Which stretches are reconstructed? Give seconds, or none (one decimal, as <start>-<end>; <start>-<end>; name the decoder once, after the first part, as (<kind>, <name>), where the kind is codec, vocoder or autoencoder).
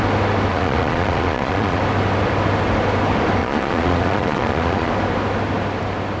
0.5-1.8 (vocoder, Vocos); 3.4-4.9